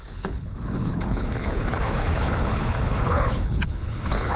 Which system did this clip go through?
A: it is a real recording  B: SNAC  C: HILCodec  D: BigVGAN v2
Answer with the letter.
C